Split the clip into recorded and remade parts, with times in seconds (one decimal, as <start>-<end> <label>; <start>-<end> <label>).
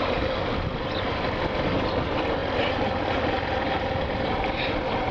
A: 0.0-5.1 recorded